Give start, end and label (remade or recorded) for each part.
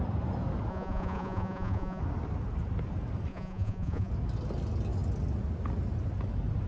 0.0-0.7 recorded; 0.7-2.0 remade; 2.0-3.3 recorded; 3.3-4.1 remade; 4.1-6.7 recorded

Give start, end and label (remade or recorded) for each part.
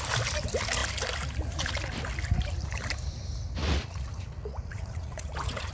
0.0-3.6 recorded; 3.6-5.7 remade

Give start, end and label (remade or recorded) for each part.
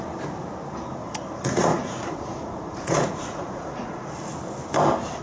0.0-1.0 recorded; 1.0-4.1 remade; 4.1-5.2 recorded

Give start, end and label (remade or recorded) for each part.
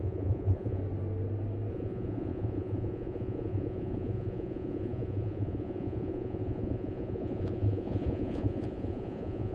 0.0-0.8 remade; 0.8-1.7 recorded; 1.7-9.5 remade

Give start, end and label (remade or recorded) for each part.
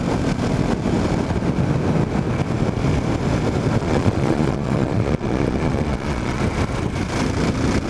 0.0-3.8 recorded; 3.8-6.4 remade; 6.4-7.9 recorded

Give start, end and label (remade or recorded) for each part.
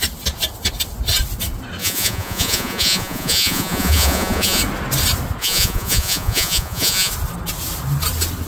0.0-1.8 recorded; 1.8-4.6 remade; 4.6-5.4 recorded; 5.4-7.1 remade; 7.1-8.5 recorded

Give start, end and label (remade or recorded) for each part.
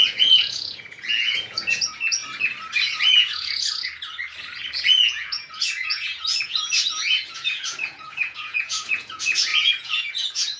0.0-2.2 remade; 2.2-3.1 recorded; 3.1-3.9 remade; 3.9-4.9 recorded; 4.9-10.6 remade